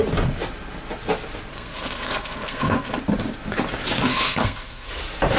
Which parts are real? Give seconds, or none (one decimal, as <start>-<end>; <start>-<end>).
0.0-1.5; 2.9-4.1; 5.0-5.4